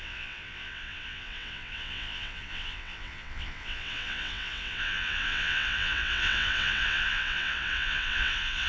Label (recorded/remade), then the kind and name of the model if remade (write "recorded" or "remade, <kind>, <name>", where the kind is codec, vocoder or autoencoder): remade, vocoder, WaveNeXt